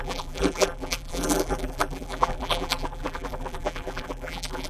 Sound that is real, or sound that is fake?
fake